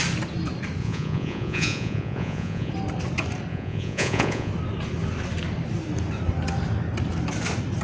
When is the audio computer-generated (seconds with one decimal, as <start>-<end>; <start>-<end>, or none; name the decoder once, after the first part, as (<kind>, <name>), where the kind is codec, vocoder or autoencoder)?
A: 0.8-2.7 (vocoder, Vocos); 3.5-4.5